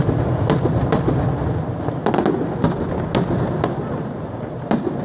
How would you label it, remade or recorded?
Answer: recorded